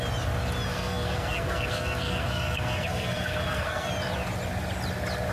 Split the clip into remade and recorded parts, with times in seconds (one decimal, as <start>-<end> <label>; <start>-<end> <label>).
0.0-0.7 recorded; 0.7-3.9 remade; 3.9-5.3 recorded